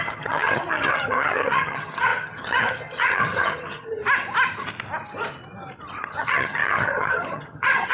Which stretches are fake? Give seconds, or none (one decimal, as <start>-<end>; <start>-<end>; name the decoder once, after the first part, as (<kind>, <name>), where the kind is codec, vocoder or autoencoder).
0.0-4.0 (vocoder, HiFi-GAN); 6.0-7.9